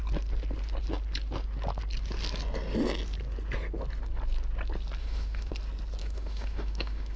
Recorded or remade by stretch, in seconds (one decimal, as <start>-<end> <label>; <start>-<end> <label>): 0.0-5.0 recorded; 5.0-5.5 remade; 5.5-6.0 recorded; 6.0-7.2 remade